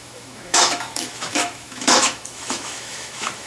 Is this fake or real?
fake